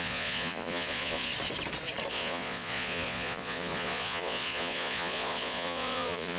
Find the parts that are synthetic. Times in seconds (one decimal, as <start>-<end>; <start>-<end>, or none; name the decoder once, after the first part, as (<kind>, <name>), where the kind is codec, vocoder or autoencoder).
0.0-1.3 (vocoder, Vocos); 2.1-6.4